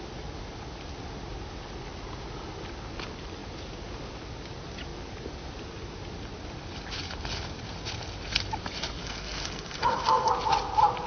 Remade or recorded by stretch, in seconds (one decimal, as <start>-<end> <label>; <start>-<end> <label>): 0.0-9.0 recorded; 9.0-10.3 remade; 10.3-11.1 recorded